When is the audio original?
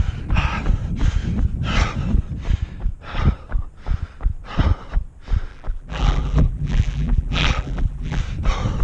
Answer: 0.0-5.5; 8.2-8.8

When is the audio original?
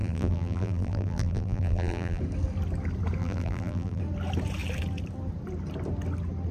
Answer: 2.2-3.2; 4.0-6.5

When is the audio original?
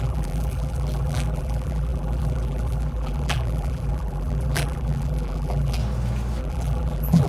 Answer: 5.8-6.4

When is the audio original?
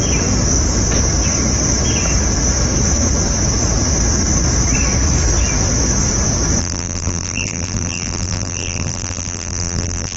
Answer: 0.0-6.6